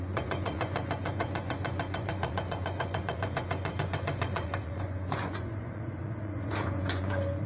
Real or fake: fake